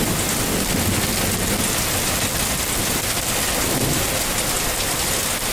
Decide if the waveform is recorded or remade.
recorded